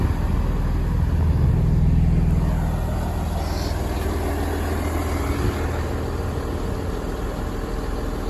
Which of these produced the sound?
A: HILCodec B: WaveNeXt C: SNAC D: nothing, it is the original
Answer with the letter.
D